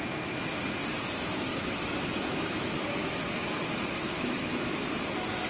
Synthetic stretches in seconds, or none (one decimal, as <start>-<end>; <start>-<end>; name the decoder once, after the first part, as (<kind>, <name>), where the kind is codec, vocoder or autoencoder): 1.5-4.8 (autoencoder, DAC-VAE)